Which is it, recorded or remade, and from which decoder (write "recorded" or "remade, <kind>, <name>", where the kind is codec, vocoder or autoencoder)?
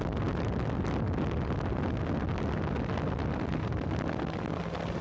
recorded